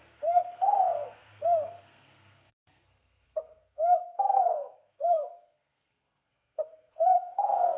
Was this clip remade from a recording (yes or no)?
yes